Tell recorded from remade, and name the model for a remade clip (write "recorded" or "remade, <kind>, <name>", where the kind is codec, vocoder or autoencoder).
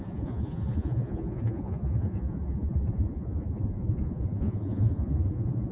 remade, vocoder, Vocos